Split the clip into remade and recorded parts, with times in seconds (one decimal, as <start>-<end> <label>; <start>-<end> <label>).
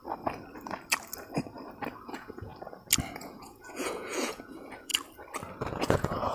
0.0-2.0 recorded; 2.0-2.5 remade; 2.5-3.1 recorded; 3.1-4.9 remade; 4.9-5.7 recorded; 5.7-6.3 remade